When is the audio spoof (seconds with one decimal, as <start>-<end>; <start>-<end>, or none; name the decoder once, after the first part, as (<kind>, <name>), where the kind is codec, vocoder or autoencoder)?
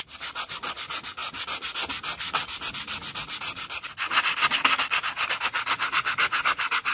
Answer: none